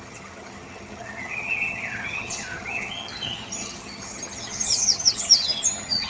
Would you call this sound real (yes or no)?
no